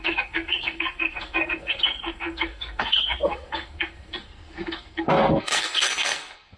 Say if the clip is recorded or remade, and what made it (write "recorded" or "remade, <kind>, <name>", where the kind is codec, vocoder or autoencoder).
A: remade, codec, SNAC